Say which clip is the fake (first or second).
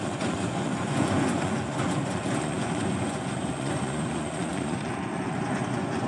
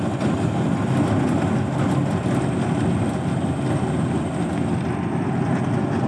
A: first